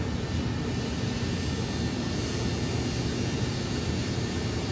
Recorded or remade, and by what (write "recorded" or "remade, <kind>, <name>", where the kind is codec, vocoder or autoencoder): recorded